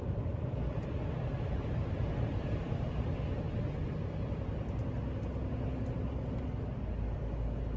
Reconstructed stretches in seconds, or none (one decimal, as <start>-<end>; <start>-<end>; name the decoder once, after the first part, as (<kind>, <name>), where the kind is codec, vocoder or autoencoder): 0.0-3.9 (vocoder, BigVGAN v2)